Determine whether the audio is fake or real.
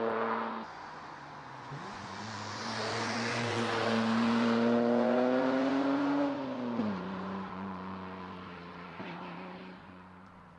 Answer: fake